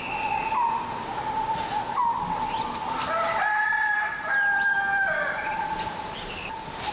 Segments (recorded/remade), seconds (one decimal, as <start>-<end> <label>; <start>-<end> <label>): 0.0-3.8 recorded; 3.8-6.9 remade